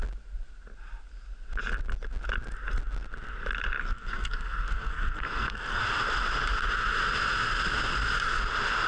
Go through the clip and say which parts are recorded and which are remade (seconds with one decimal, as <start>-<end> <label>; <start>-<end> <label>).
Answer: 0.0-3.8 recorded; 3.8-5.8 remade; 5.8-8.9 recorded